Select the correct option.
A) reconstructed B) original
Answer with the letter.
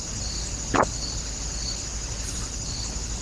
B